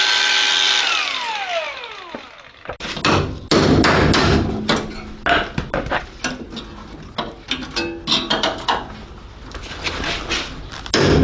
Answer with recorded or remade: recorded